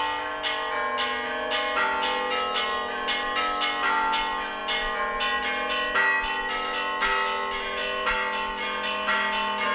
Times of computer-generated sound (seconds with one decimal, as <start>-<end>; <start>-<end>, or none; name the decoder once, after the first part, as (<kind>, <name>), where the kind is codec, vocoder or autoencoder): none